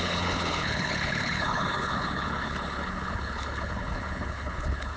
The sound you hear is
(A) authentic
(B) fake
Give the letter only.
B